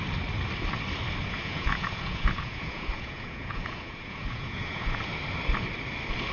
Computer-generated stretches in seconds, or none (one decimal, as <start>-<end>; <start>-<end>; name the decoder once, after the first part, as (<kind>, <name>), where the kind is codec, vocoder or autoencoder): 1.2-5.0 (vocoder, Vocos)